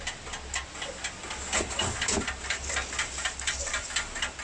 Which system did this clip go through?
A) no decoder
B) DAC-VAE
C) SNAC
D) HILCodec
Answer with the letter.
A